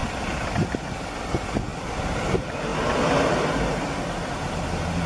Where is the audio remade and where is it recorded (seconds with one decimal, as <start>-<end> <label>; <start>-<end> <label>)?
0.0-5.1 recorded